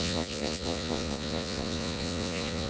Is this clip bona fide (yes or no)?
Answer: no